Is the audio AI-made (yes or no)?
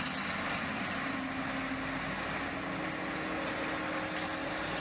no